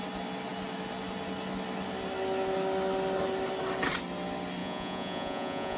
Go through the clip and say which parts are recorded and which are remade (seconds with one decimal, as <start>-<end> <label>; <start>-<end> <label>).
0.0-4.6 recorded; 4.6-5.8 remade